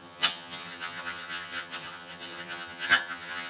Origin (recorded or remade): remade